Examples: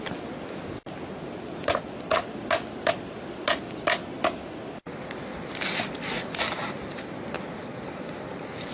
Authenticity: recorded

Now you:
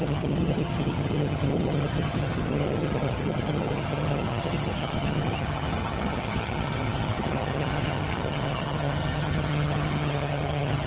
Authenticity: remade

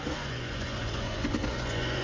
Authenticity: remade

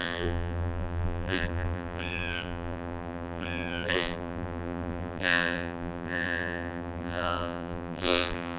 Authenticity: remade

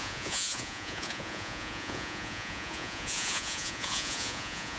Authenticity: remade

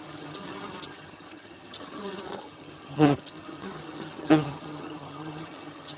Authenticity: remade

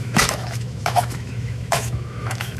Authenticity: remade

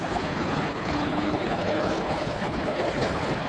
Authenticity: remade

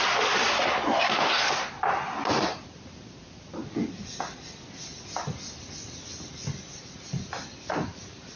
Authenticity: remade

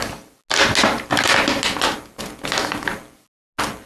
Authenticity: recorded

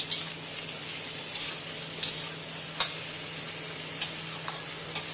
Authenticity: recorded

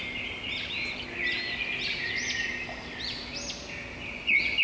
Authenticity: recorded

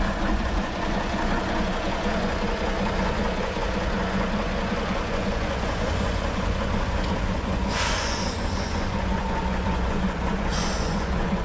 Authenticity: remade